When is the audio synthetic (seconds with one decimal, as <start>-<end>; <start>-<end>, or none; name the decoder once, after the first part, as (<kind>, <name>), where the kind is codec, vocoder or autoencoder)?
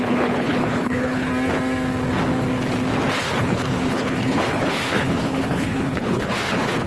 0.0-1.3 (codec, HILCodec); 3.2-6.9